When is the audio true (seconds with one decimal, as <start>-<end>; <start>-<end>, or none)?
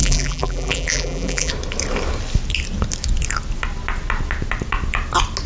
1.5-5.5